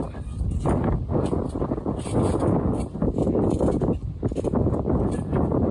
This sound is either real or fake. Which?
real